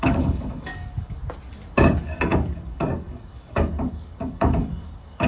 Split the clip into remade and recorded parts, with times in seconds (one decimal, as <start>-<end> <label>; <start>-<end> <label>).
0.0-1.2 remade; 1.2-1.7 recorded; 1.7-5.3 remade